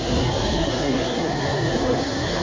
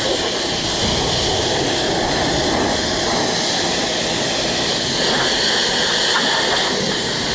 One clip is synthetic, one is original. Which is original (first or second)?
second